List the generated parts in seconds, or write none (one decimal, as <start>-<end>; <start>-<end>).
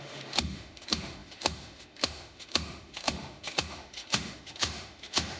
0.0-5.4